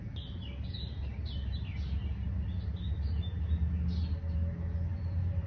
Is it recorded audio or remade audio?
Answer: recorded